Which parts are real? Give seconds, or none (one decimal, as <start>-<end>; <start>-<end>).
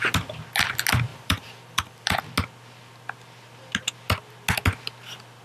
0.0-1.1; 2.2-5.4